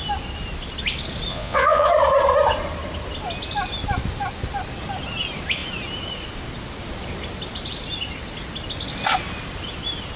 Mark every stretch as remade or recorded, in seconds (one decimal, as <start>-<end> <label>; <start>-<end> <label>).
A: 0.0-1.3 recorded; 1.3-1.9 remade; 1.9-10.2 recorded